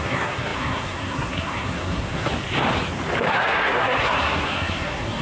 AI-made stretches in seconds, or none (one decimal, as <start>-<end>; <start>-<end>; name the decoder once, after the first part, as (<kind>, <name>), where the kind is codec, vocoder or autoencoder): 0.0-2.3 (codec, SNAC); 3.2-5.2

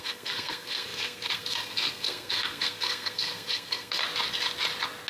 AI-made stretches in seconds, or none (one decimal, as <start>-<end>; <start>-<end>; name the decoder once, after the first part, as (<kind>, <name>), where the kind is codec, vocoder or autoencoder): 0.0-4.0 (codec, SNAC)